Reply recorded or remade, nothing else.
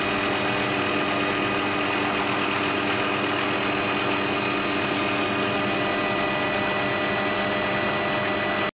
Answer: recorded